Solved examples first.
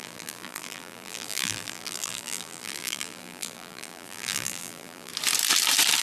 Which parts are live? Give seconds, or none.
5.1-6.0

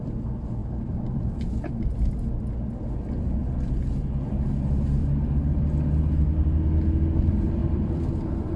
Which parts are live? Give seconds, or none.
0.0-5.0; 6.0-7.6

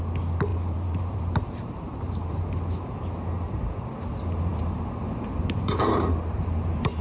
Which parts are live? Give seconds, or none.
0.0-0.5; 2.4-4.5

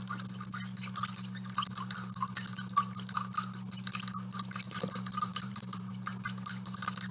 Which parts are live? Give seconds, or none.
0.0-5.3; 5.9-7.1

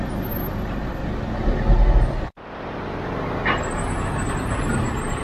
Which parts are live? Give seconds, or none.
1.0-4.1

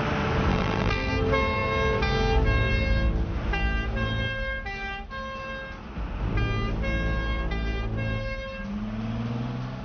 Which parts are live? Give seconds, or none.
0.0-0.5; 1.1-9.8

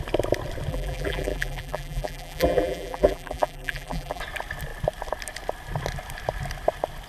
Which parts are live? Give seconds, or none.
0.0-0.7; 4.2-7.1